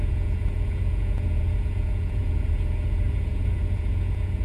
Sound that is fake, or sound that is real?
fake